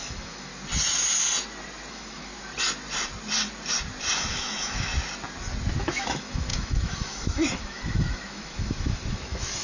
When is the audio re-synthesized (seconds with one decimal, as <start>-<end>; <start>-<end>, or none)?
0.0-0.5; 1.9-2.3; 4.3-4.9; 5.8-9.6